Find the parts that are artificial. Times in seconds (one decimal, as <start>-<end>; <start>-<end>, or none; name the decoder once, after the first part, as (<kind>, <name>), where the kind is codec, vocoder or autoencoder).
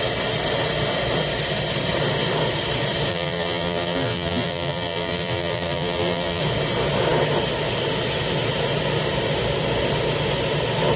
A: 3.1-6.4 (vocoder, BigVGAN v2)